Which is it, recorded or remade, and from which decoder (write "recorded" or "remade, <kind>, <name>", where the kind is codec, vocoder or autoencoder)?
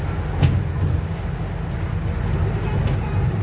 recorded